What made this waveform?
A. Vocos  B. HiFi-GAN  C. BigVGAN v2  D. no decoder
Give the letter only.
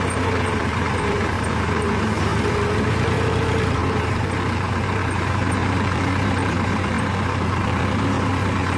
C